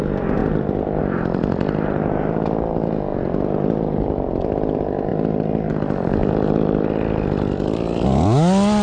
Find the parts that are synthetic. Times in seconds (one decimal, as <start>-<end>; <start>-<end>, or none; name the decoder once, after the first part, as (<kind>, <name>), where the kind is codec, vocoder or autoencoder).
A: 0.4-1.0 (vocoder, BigVGAN v2); 3.1-3.8; 5.1-5.7; 6.2-6.8